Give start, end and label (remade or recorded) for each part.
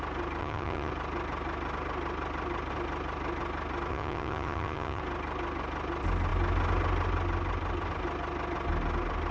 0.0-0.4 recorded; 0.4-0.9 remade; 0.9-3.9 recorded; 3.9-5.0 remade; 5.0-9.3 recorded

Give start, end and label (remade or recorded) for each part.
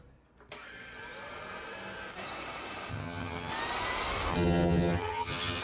0.0-2.9 recorded; 2.9-3.5 remade; 3.5-4.3 recorded; 4.3-5.6 remade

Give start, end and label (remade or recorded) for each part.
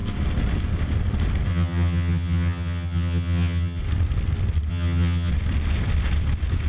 0.0-1.5 recorded; 1.5-3.8 remade; 3.8-4.7 recorded; 4.7-5.3 remade; 5.3-6.7 recorded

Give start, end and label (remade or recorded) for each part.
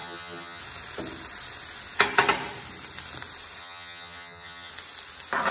0.0-0.6 remade; 0.6-3.6 recorded; 3.6-4.7 remade; 4.7-5.5 recorded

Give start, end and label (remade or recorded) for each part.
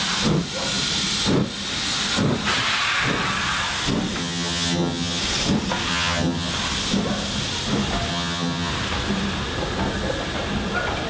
0.0-4.2 recorded; 4.2-5.2 remade; 5.2-5.9 recorded; 5.9-6.5 remade; 6.5-8.1 recorded; 8.1-8.7 remade; 8.7-11.1 recorded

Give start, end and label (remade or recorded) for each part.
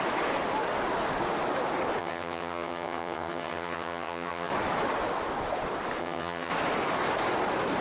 0.0-2.0 recorded; 2.0-4.5 remade; 4.5-6.0 recorded; 6.0-6.5 remade; 6.5-7.8 recorded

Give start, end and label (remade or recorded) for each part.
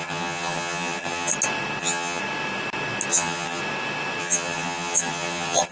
0.0-1.3 remade; 1.3-1.8 recorded; 1.8-2.2 remade; 2.2-3.1 recorded; 3.1-3.6 remade; 3.6-4.2 recorded; 4.2-5.7 remade